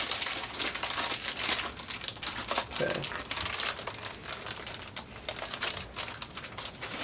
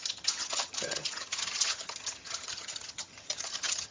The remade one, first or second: second